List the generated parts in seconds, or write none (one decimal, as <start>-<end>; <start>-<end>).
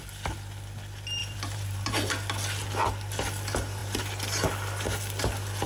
1.2-2.1